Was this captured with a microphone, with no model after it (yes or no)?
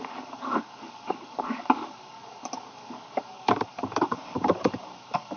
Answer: no